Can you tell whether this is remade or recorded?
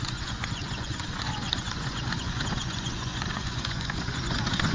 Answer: remade